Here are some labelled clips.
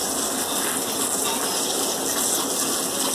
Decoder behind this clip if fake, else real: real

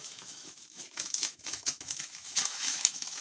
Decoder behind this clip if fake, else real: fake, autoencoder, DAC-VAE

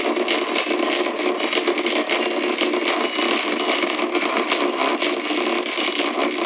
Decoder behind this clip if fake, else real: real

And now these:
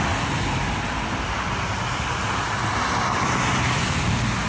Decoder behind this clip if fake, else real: real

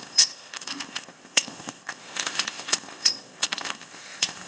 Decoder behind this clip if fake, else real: fake, codec, ZipCodec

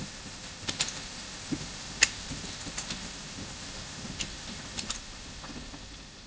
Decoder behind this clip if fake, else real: real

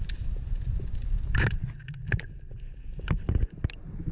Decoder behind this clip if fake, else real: real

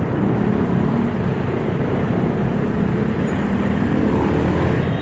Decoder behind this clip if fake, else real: real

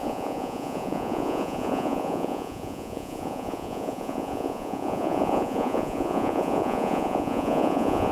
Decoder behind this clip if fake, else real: fake, vocoder, Vocos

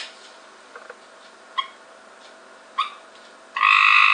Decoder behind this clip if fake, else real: real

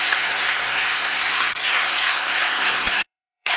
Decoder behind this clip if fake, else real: fake, codec, SNAC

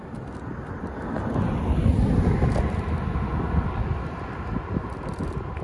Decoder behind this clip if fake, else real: real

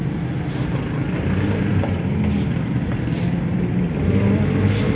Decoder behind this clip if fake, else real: real